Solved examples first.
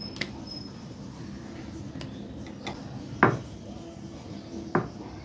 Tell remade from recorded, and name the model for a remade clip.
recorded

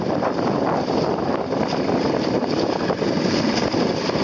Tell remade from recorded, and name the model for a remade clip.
recorded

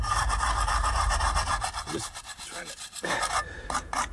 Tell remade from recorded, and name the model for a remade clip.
remade, vocoder, BigVGAN v2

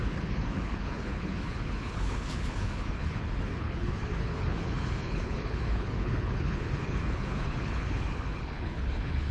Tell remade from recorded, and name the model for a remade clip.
remade, codec, HILCodec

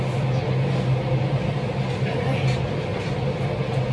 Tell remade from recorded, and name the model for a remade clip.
recorded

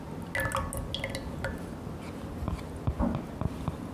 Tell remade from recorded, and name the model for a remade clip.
recorded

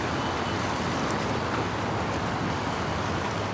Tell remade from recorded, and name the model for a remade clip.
recorded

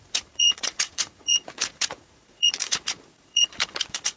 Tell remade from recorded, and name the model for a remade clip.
remade, vocoder, Vocos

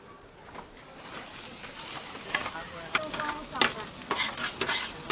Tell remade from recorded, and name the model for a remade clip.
recorded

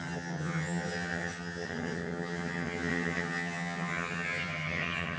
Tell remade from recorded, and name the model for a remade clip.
remade, vocoder, HiFi-GAN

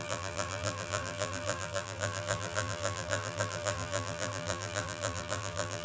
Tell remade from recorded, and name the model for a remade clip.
remade, vocoder, BigVGAN v2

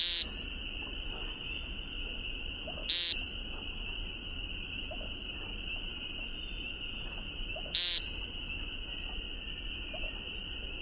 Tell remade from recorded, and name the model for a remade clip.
recorded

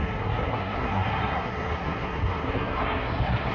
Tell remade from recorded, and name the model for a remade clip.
remade, codec, SNAC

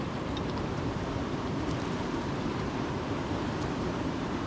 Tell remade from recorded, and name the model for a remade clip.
remade, vocoder, BigVGAN v2